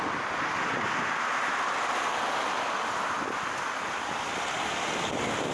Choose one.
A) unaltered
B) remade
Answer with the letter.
A